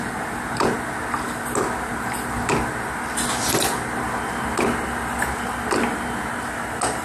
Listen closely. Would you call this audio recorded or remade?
recorded